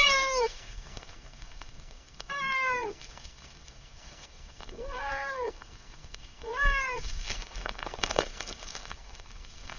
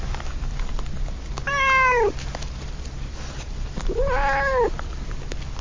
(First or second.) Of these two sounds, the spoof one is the first